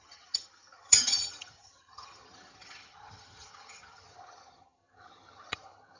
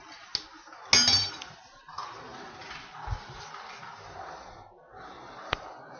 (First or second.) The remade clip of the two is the first